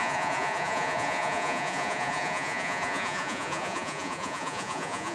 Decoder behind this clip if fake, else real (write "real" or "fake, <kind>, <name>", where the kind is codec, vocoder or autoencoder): fake, vocoder, Vocos